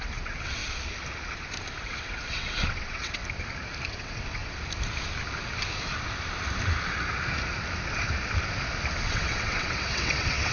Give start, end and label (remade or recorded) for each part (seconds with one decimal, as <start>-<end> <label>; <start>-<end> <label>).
0.0-0.6 remade; 0.6-1.8 recorded; 1.8-3.2 remade; 3.2-3.9 recorded; 3.9-4.4 remade; 4.4-9.0 recorded; 9.0-10.5 remade